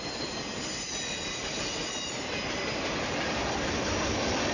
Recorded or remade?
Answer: recorded